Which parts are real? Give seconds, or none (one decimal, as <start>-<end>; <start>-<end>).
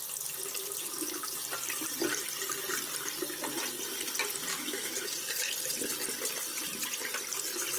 0.0-4.5; 5.1-7.8